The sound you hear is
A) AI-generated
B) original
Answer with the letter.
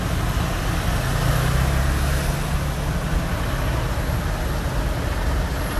B